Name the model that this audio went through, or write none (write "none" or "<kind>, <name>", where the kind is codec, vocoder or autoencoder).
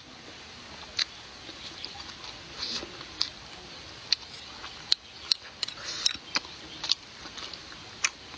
none